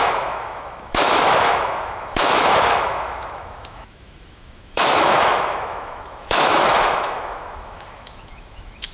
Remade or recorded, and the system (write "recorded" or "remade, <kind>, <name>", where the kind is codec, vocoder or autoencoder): remade, autoencoder, DAC-VAE